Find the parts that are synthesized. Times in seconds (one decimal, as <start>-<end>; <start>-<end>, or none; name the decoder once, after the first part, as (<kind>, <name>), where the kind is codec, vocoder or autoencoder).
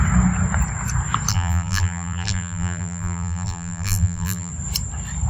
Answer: 1.3-4.5 (vocoder, BigVGAN v2)